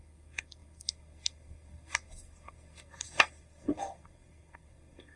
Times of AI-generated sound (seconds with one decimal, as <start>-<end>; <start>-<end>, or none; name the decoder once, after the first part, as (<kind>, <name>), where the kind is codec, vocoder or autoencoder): 0.0-5.2 (codec, SNAC)

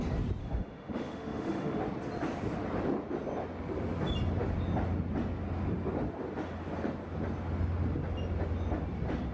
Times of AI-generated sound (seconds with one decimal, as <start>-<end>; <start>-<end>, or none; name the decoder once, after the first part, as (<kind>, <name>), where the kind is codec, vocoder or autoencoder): 0.4-1.8 (autoencoder, DAC-VAE)

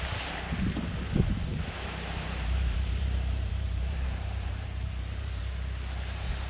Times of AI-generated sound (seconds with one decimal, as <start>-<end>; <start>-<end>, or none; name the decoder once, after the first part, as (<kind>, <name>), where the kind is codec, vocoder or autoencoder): 1.5-5.4 (vocoder, BigVGAN v2)

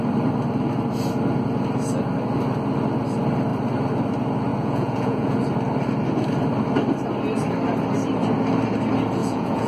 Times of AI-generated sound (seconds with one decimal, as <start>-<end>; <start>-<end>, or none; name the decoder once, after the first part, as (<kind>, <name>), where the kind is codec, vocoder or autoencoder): 4.5-5.4 (vocoder, Vocos); 9.2-9.7

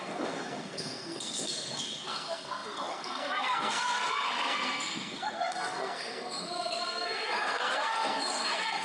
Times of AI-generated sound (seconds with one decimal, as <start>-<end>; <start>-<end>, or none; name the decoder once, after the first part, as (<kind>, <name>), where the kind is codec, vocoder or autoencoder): 0.0-8.8 (codec, SNAC)